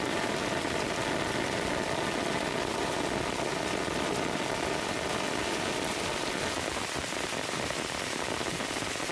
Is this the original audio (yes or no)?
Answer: yes